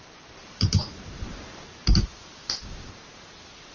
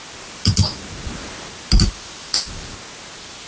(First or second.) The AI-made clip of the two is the first